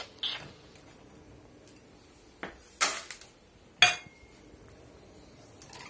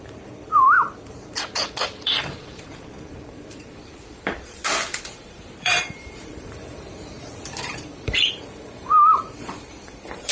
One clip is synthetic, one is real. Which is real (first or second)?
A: first